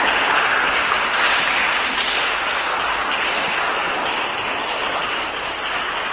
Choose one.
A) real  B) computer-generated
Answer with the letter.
A